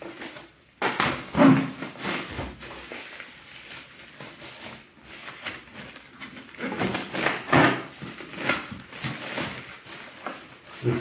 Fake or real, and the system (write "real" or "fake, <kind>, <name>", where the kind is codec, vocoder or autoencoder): real